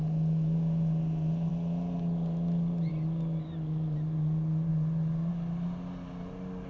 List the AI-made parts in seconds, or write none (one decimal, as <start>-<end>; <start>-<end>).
none